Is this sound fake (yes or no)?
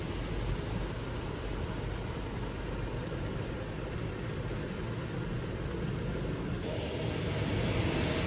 no